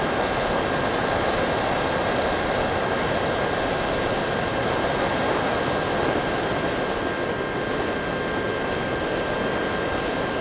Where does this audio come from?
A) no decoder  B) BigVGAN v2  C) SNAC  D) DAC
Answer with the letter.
A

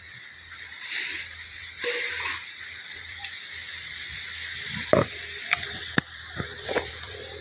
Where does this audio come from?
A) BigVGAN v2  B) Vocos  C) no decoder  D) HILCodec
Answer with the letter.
A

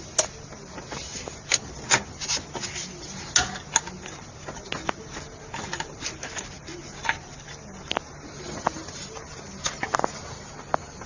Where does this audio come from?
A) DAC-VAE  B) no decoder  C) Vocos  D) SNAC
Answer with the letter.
B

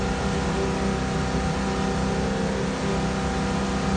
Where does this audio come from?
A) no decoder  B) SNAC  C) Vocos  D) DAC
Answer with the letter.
A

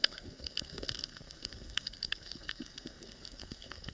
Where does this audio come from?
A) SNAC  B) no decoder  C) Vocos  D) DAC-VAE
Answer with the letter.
A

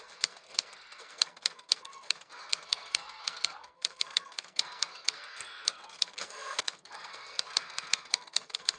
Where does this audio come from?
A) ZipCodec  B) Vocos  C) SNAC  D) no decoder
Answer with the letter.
C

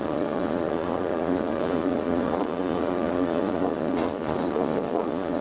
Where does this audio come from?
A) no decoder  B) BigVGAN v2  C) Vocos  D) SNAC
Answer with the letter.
C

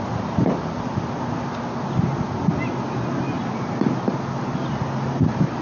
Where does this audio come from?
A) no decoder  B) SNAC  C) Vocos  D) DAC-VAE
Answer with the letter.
A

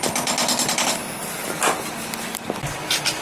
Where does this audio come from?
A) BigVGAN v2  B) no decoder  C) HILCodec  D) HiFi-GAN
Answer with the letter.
B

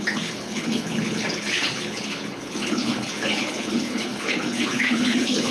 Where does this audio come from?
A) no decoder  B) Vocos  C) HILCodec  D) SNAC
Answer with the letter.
C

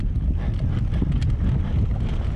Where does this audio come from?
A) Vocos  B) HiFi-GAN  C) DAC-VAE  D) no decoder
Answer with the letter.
D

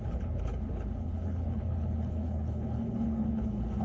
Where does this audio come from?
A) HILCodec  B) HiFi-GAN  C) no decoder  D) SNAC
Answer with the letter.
A